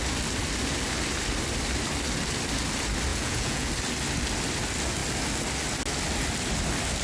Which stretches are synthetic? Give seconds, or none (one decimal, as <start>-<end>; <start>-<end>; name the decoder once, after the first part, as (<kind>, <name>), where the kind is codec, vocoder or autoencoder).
3.1-3.7 (vocoder, Vocos)